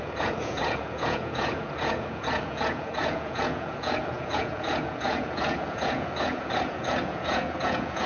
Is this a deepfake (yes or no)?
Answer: yes